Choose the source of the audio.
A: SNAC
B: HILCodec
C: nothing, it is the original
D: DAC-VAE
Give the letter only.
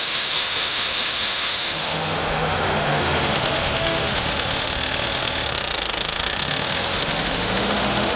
D